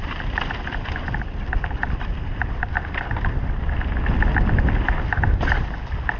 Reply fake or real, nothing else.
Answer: real